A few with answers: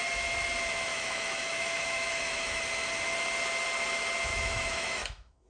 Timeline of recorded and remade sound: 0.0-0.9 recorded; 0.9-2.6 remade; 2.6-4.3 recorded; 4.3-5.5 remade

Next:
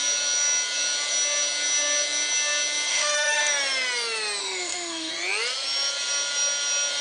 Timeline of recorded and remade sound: 0.0-2.9 recorded; 2.9-3.4 remade; 3.4-4.4 recorded; 4.4-5.1 remade; 5.1-7.0 recorded

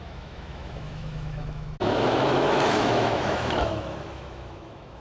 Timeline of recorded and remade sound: 0.0-5.0 remade

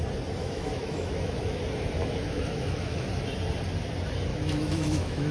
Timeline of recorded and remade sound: 0.0-0.4 recorded; 0.4-1.6 remade; 1.6-2.0 recorded; 2.0-3.1 remade; 3.1-4.3 recorded; 4.3-5.3 remade

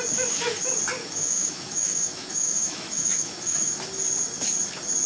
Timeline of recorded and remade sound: 0.0-1.0 recorded; 1.0-3.7 remade; 3.7-5.1 recorded